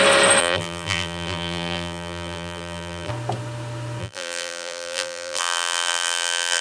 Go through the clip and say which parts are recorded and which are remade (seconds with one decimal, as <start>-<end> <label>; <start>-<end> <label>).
0.0-0.4 recorded; 0.4-3.1 remade; 3.1-4.0 recorded; 4.0-6.6 remade